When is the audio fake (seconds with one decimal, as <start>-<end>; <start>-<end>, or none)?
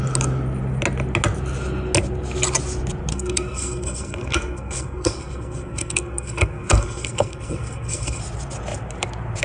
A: 3.1-8.2